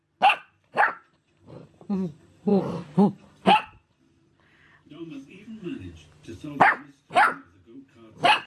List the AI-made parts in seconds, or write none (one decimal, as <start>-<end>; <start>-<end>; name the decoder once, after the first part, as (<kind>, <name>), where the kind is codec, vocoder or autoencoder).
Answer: 0.4-1.3 (vocoder, BigVGAN v2); 2.5-5.8